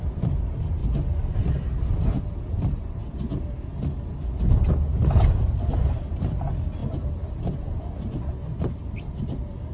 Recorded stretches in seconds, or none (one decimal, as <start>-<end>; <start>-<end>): 0.0-0.8; 2.2-9.7

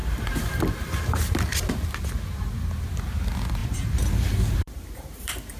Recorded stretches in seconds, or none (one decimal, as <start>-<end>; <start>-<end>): 0.6-3.6

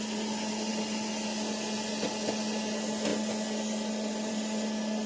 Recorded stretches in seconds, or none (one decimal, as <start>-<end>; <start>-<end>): 0.0-5.1

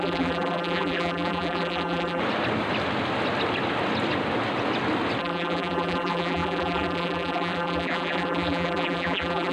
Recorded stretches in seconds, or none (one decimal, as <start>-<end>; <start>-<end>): 2.2-5.2

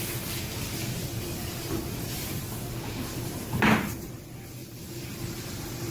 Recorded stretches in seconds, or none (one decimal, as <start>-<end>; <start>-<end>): 0.0-1.1; 2.4-5.9

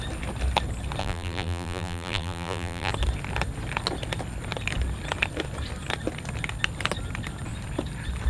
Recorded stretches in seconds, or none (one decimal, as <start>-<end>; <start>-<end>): 0.0-1.0; 2.9-8.3

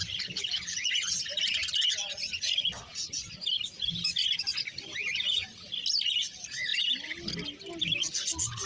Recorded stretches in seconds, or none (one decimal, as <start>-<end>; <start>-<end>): 0.0-8.7

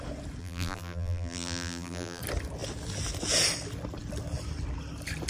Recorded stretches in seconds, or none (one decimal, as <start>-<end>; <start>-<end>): 0.0-0.4; 2.2-5.3